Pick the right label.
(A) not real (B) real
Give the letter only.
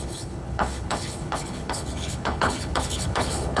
A